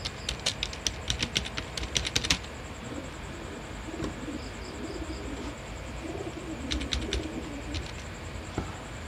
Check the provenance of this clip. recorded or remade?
recorded